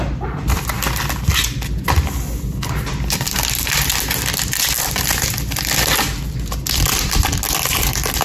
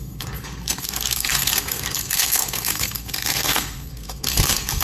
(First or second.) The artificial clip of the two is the second